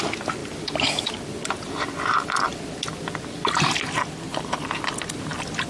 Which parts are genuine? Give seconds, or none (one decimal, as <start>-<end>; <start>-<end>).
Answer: 0.0-0.4; 2.8-4.3